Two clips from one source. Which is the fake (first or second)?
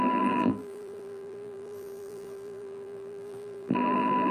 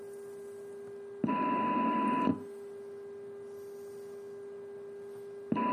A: first